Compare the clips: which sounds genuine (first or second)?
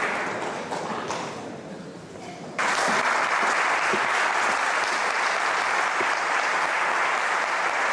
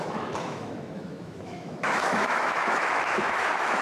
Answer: first